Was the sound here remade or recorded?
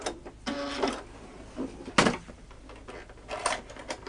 recorded